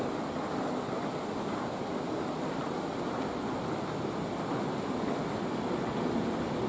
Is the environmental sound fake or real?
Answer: real